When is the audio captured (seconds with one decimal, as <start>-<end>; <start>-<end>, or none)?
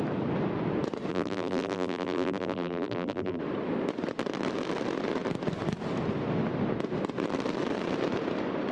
0.0-1.1; 3.4-8.7